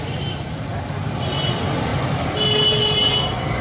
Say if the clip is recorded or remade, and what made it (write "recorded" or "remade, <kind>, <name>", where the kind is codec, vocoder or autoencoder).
recorded